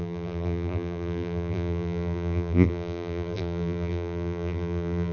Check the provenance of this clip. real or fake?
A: fake